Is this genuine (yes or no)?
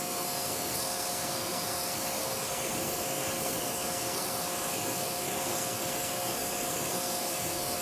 no